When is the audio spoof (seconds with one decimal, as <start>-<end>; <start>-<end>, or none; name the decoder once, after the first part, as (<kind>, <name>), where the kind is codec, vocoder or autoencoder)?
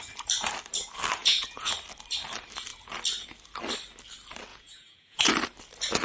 1.2-1.7 (vocoder, Vocos); 4.5-5.3